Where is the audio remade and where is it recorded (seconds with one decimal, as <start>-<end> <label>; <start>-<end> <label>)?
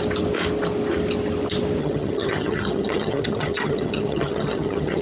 0.0-1.8 recorded; 1.8-5.0 remade